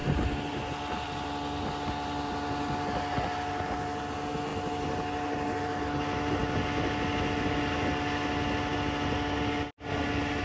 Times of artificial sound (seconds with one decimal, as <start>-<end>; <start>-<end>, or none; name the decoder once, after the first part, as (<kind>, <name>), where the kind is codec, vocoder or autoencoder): none